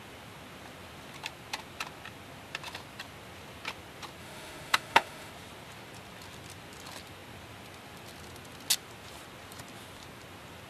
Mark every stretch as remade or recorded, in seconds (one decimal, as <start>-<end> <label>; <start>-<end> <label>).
0.0-4.2 recorded; 4.2-5.3 remade; 5.3-10.7 recorded